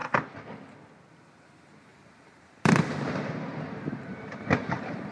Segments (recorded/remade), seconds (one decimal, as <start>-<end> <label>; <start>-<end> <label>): 0.0-1.9 recorded; 1.9-5.1 remade